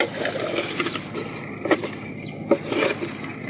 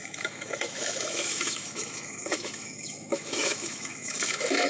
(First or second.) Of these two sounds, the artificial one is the second